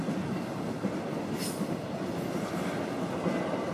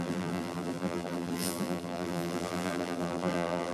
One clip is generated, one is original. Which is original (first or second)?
first